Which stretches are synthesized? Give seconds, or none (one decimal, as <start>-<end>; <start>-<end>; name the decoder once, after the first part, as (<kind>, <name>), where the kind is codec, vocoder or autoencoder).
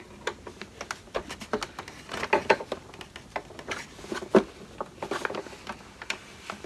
none